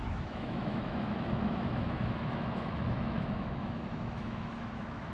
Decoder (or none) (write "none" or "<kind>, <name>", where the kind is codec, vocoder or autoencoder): autoencoder, DAC-VAE